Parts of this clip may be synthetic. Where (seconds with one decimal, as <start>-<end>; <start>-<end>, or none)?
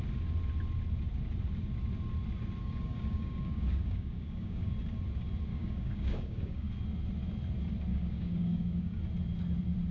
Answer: 2.6-4.7; 5.5-6.7; 7.9-9.0